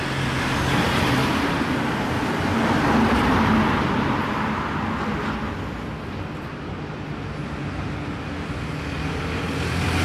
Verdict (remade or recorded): recorded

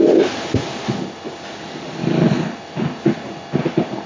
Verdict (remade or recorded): recorded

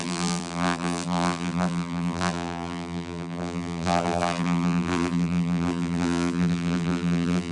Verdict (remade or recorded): remade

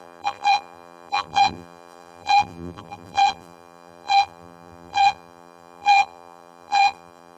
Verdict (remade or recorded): remade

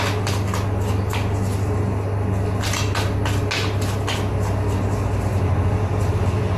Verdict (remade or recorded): recorded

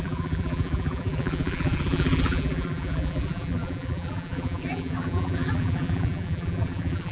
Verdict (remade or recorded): remade